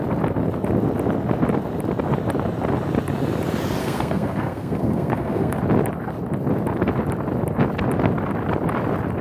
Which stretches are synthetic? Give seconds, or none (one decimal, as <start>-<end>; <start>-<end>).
3.8-5.6